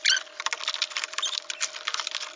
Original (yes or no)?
yes